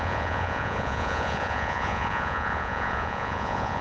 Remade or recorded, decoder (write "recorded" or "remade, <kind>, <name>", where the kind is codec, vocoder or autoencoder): remade, vocoder, Vocos